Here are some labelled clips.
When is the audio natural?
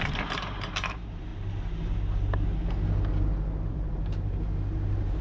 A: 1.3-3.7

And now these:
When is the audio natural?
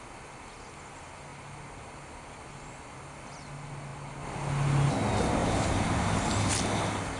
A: 0.0-5.4; 6.5-7.2